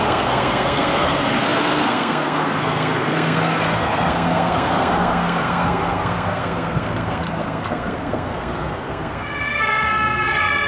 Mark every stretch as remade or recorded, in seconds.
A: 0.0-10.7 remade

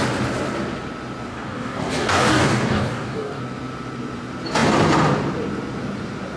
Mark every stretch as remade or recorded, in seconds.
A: 0.0-1.3 recorded; 1.3-3.4 remade; 3.4-6.4 recorded

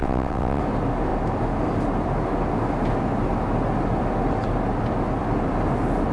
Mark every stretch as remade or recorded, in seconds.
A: 0.0-0.6 remade; 0.6-6.1 recorded

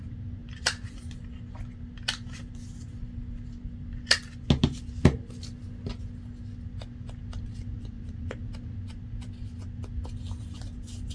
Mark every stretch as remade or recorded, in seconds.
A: 0.0-11.1 recorded

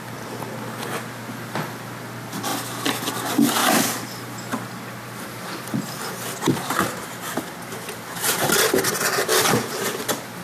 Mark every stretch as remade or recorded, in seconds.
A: 0.0-3.6 recorded; 3.6-8.7 remade; 8.7-9.3 recorded; 9.3-10.0 remade; 10.0-10.4 recorded